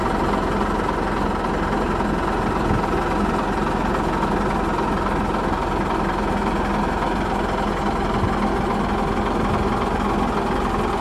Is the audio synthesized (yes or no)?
no